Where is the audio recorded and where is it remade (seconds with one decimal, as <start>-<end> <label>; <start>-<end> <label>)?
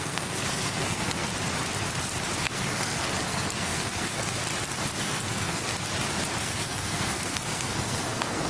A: 0.0-1.3 remade; 1.3-2.4 recorded; 2.4-4.4 remade; 4.4-5.0 recorded; 5.0-5.7 remade; 5.7-6.4 recorded; 6.4-8.5 remade